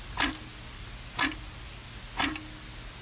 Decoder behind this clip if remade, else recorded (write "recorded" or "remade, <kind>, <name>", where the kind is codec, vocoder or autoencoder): recorded